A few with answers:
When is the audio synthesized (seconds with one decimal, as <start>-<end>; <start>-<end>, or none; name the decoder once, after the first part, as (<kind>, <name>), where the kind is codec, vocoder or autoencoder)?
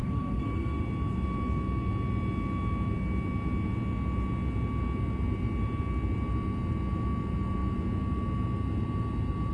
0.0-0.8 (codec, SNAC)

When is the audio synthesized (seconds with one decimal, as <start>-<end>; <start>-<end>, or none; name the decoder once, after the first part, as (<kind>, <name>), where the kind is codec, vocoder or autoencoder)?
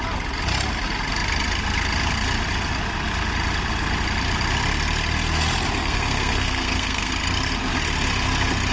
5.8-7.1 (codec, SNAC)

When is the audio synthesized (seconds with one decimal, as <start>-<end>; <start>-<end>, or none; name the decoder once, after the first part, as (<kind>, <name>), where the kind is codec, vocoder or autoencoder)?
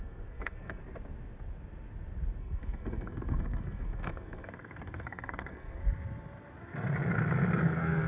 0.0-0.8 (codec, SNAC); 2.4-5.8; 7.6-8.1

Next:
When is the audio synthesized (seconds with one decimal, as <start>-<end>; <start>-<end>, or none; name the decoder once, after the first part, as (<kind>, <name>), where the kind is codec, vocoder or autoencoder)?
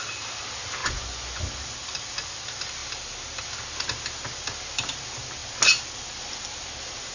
0.8-1.4 (vocoder, Vocos)